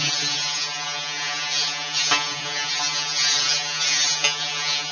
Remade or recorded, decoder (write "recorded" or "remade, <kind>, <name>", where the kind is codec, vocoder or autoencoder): recorded